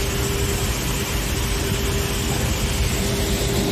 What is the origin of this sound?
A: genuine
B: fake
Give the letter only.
A